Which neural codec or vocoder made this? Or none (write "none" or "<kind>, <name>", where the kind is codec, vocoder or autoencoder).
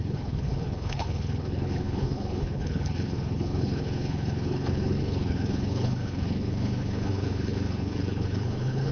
codec, HILCodec